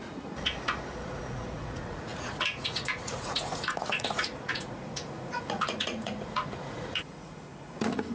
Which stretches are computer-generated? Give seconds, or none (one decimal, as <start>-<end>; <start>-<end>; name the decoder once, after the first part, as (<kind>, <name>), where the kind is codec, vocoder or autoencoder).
0.0-8.1 (vocoder, Vocos)